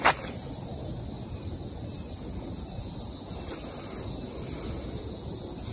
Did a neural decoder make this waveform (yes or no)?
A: no